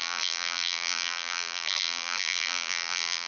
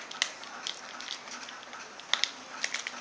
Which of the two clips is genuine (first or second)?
second